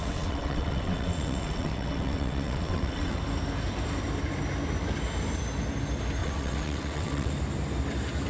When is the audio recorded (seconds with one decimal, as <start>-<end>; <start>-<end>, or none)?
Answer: 3.2-6.2; 7.3-8.3